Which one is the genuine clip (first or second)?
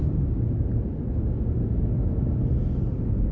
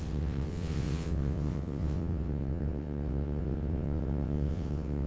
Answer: first